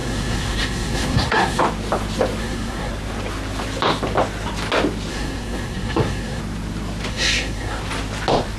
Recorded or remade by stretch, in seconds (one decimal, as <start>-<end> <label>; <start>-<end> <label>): 0.0-1.6 remade; 1.6-2.4 recorded; 2.4-2.9 remade; 2.9-5.1 recorded; 5.1-6.4 remade; 6.4-7.1 recorded; 7.1-7.8 remade; 7.8-8.6 recorded